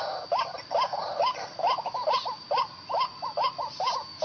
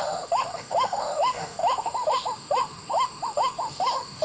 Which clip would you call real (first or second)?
first